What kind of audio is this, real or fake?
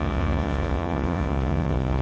fake